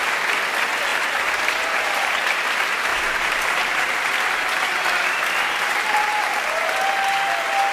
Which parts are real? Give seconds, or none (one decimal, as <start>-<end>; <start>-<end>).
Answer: 0.0-0.9; 2.1-2.9; 3.9-7.7